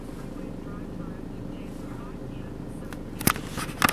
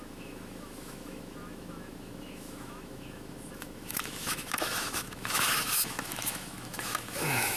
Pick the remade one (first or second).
second